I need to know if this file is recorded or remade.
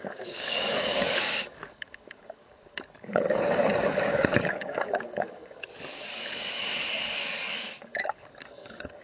remade